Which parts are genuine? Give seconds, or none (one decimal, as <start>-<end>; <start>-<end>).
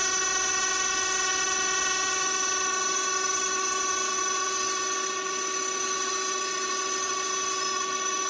0.0-8.3